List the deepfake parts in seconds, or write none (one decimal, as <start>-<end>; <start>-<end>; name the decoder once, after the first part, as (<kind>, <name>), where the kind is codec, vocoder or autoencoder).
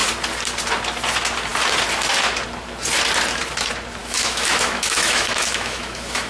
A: 4.0-6.3 (autoencoder, DAC-VAE)